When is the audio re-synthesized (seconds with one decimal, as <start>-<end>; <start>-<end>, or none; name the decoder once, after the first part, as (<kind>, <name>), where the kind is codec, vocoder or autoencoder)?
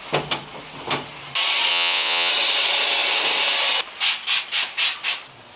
1.7-2.3 (vocoder, WaveNeXt)